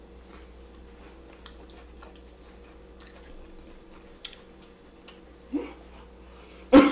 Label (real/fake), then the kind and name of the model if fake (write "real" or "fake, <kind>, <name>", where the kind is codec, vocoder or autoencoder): real